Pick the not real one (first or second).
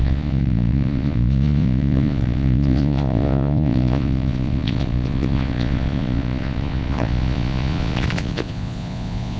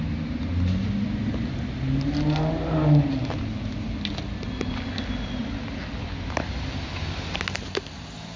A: first